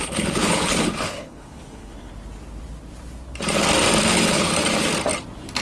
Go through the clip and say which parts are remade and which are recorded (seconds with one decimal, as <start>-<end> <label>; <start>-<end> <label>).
0.0-2.1 remade; 2.1-4.0 recorded; 4.0-4.5 remade; 4.5-5.6 recorded